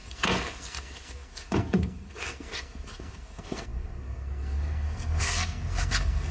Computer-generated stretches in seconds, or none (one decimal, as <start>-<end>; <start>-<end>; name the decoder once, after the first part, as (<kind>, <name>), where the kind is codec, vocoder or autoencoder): 0.0-6.3 (codec, SNAC)